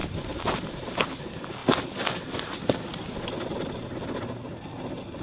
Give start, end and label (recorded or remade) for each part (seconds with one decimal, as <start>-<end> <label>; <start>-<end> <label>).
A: 0.0-0.9 remade; 0.9-5.2 recorded